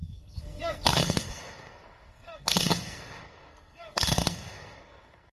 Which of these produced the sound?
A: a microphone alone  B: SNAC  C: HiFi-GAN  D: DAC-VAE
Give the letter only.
B